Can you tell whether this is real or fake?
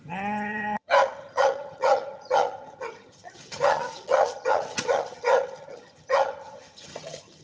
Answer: fake